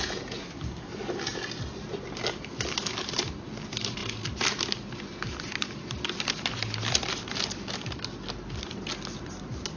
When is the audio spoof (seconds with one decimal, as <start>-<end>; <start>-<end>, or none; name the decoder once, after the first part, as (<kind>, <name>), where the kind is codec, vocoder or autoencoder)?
0.4-0.9 (codec, SNAC)